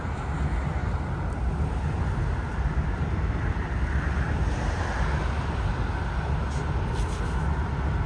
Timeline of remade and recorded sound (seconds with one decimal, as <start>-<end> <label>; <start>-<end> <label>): 0.0-8.1 recorded